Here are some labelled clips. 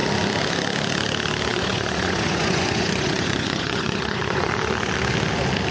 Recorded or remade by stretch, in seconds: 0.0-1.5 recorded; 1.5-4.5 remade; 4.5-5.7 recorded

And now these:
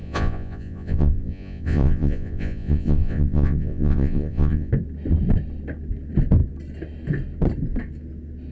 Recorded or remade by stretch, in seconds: 0.0-4.7 remade; 4.7-8.5 recorded

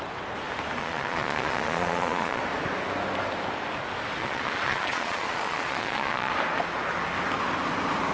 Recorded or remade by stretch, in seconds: 0.0-0.8 recorded; 0.8-2.4 remade; 2.4-4.2 recorded; 4.2-6.3 remade; 6.3-8.1 recorded

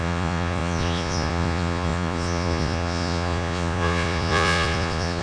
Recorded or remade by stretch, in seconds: 0.0-5.2 remade

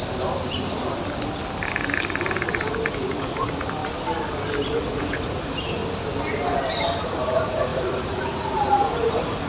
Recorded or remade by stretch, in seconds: 0.0-3.0 recorded; 3.0-3.8 remade; 3.8-4.7 recorded; 4.7-5.8 remade; 5.8-7.0 recorded; 7.0-9.5 remade